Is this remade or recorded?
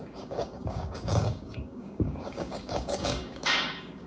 remade